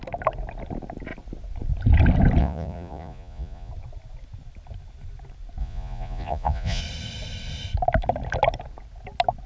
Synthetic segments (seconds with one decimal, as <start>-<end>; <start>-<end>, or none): 2.4-3.7; 5.6-6.8